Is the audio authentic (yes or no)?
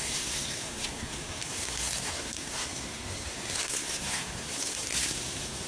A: no